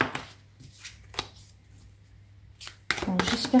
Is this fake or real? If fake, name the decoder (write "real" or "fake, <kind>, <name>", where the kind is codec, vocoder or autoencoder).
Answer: real